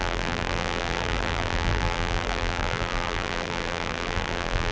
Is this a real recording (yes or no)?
no